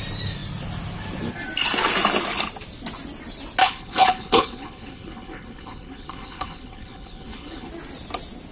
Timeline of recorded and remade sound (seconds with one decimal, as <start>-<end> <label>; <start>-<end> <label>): 0.0-3.6 recorded; 3.6-7.7 remade; 7.7-8.5 recorded